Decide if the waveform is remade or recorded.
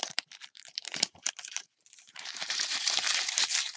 remade